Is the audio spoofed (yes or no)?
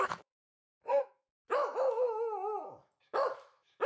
yes